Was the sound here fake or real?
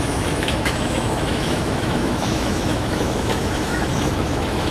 fake